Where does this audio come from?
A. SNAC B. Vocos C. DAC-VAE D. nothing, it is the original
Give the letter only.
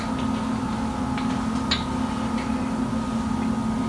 D